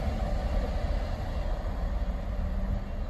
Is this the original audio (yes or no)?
yes